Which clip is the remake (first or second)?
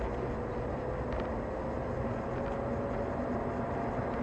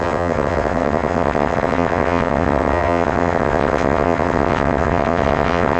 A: second